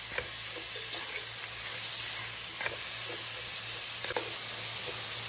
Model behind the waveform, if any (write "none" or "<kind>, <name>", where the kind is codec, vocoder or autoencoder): none